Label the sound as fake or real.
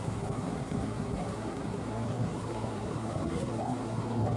fake